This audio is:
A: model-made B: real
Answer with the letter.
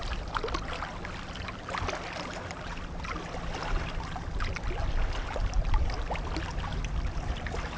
B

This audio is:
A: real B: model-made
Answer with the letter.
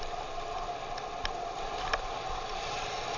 A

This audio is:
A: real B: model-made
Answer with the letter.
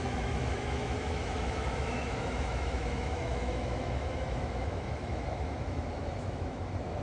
B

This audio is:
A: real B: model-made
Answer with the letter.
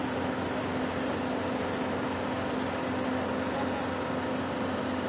A